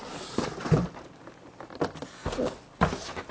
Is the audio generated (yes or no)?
no